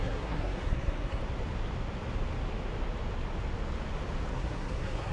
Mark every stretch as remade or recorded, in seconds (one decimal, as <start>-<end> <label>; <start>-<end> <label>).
0.0-1.2 remade; 1.2-4.3 recorded; 4.3-5.1 remade